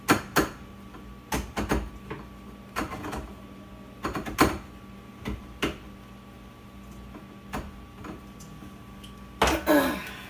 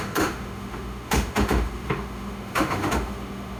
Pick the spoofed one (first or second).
second